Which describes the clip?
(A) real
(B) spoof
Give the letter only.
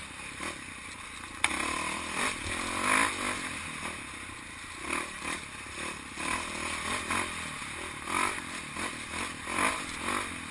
A